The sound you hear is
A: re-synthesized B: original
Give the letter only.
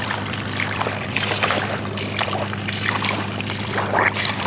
A